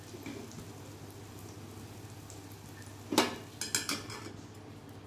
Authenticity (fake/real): real